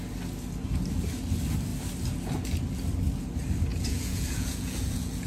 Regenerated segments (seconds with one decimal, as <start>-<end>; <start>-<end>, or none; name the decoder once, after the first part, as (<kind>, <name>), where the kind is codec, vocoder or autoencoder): 3.7-5.3 (vocoder, Vocos)